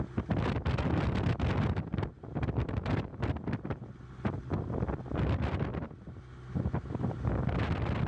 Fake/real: real